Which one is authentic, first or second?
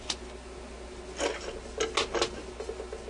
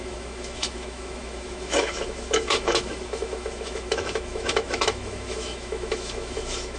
first